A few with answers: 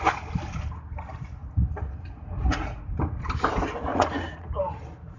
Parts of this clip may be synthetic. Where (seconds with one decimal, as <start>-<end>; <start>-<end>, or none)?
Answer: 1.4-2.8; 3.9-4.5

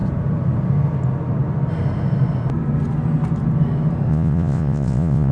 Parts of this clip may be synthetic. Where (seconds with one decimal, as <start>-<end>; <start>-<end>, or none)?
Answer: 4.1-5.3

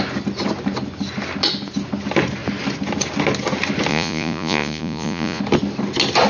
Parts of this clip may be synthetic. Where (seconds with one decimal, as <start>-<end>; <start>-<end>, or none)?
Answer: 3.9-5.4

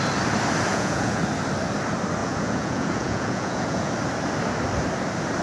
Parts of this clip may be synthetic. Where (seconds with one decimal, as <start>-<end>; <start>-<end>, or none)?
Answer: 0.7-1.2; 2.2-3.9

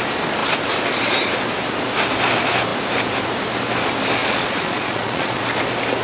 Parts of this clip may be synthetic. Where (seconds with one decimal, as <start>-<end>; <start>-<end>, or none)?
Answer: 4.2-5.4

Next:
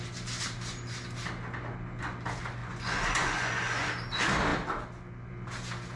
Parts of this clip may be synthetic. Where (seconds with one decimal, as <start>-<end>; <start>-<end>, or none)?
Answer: 2.6-3.9